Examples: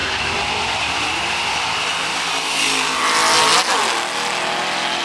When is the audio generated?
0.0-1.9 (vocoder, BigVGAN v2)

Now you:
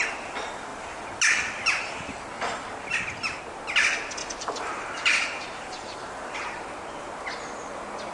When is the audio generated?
4.2-6.4 (vocoder, BigVGAN v2)

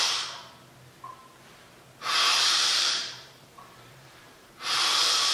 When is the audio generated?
2.3-4.5 (vocoder, BigVGAN v2)

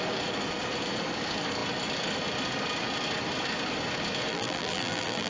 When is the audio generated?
4.3-5.3 (vocoder, BigVGAN v2)